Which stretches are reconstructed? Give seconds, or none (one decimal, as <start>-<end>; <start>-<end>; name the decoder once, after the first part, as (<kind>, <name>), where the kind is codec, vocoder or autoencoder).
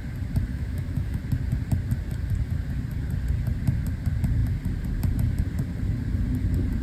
0.5-1.2 (autoencoder, DAC-VAE)